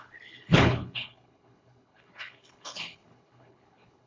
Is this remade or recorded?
remade